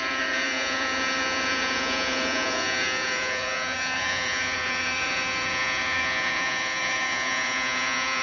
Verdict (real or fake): fake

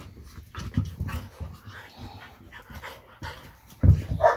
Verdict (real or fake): real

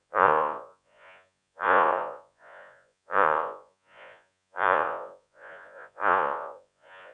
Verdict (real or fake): fake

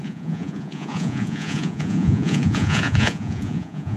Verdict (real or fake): fake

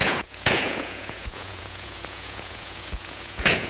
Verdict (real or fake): fake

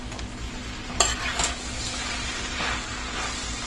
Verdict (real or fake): real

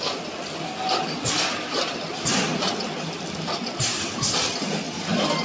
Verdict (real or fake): real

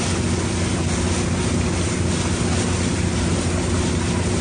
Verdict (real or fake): real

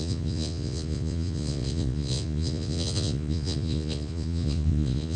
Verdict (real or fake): fake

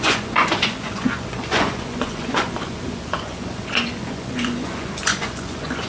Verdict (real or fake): fake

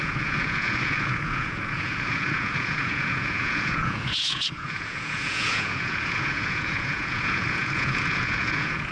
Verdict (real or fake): fake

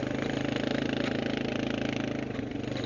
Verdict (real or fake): real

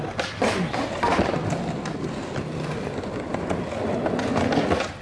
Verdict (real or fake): real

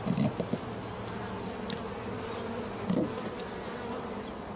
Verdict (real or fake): real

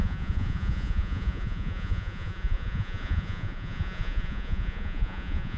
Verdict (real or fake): fake